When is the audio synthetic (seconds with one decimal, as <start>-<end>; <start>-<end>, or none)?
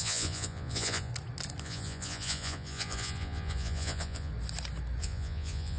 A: 0.0-1.1; 1.6-4.3; 5.0-5.8